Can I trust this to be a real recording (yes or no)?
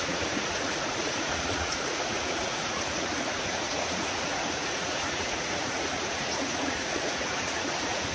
no